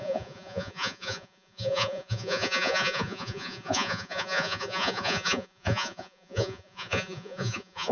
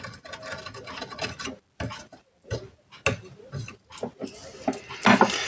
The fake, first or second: first